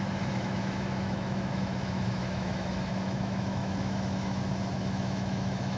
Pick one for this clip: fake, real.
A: fake